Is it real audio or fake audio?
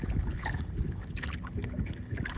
fake